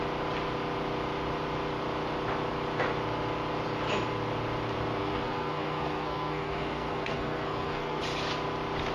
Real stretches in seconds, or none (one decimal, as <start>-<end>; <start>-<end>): 0.0-5.0; 8.0-8.9